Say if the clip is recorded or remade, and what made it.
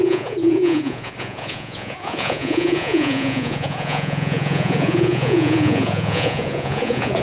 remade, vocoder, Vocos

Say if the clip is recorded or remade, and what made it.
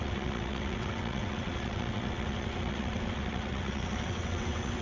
remade, vocoder, WaveNeXt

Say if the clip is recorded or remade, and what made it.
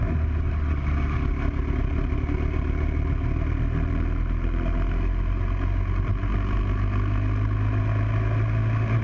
recorded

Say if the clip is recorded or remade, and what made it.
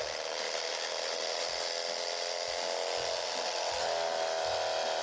recorded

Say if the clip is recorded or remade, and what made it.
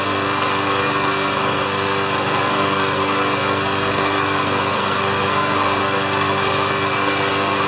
remade, codec, SNAC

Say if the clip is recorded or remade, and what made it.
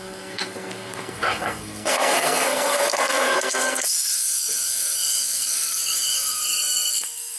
remade, codec, SNAC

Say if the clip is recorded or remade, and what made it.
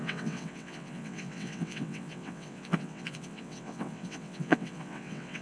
remade, vocoder, WaveNeXt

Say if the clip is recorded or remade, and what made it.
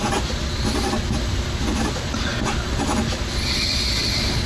recorded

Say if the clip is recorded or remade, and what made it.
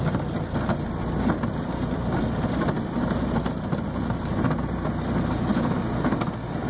recorded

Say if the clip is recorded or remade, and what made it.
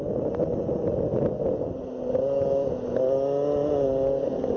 recorded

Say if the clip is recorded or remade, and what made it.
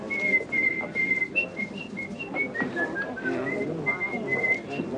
recorded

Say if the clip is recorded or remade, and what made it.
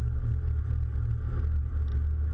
recorded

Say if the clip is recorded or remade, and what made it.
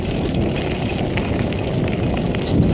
recorded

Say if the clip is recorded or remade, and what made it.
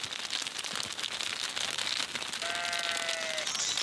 recorded